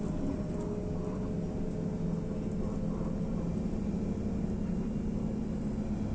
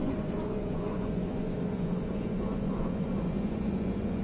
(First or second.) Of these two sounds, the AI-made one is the second